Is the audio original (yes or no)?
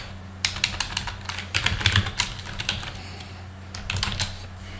yes